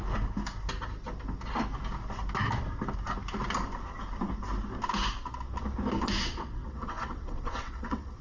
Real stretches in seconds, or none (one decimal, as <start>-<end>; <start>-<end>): 0.0-6.2